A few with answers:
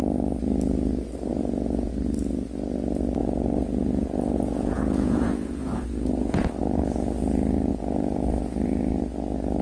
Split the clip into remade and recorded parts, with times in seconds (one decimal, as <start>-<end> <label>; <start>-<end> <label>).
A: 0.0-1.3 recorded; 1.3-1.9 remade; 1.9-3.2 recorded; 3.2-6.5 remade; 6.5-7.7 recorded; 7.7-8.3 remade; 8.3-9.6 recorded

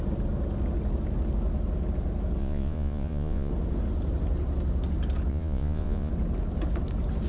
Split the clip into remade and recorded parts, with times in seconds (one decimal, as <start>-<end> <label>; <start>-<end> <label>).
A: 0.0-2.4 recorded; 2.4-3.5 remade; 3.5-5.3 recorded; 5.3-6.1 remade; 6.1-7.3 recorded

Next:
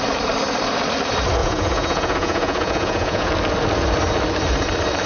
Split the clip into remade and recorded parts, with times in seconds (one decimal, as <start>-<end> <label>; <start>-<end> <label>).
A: 0.0-1.4 recorded; 1.4-3.3 remade; 3.3-5.1 recorded

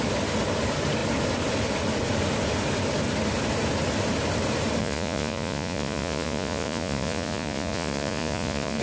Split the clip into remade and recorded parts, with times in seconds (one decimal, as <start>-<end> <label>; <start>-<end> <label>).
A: 0.0-4.8 recorded; 4.8-8.8 remade

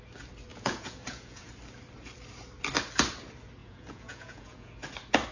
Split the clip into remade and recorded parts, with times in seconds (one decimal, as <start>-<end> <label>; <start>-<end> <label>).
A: 0.0-0.5 recorded; 0.5-1.5 remade; 1.5-3.6 recorded; 3.6-4.7 remade; 4.7-5.3 recorded

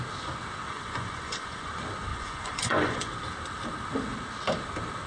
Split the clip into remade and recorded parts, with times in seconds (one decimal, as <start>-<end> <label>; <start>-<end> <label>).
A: 0.0-0.7 recorded; 0.7-1.7 remade; 1.7-2.1 recorded; 2.1-3.1 remade; 3.1-5.1 recorded

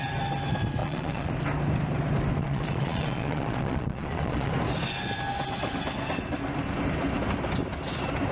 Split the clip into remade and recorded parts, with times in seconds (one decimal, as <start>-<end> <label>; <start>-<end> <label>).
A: 0.0-0.8 recorded; 0.8-1.3 remade; 1.3-2.4 recorded; 2.4-4.5 remade; 4.5-8.3 recorded

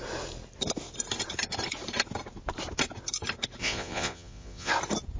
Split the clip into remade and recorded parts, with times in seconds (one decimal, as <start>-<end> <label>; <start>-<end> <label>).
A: 0.0-3.6 recorded; 3.6-4.7 remade; 4.7-5.2 recorded